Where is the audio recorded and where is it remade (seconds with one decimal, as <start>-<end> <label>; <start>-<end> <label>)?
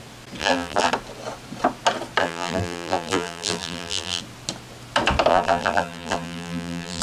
0.0-0.4 recorded; 0.4-0.9 remade; 0.9-2.2 recorded; 2.2-4.2 remade; 4.2-5.3 recorded; 5.3-7.0 remade